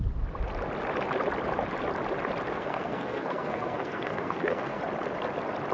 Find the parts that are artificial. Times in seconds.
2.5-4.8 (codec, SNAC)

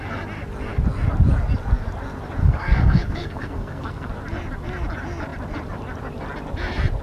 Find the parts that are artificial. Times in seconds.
2.4-4.1 (codec, SNAC)

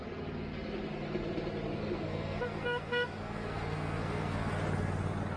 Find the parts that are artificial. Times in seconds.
1.8-4.5 (codec, SNAC)

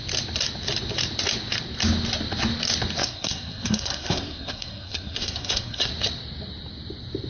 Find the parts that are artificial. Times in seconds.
3.0-5.9 (codec, SNAC)

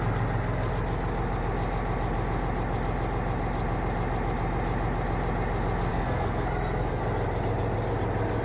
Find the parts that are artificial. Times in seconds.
5.9-7.0 (codec, SNAC)